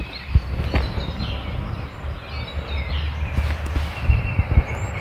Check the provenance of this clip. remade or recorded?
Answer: recorded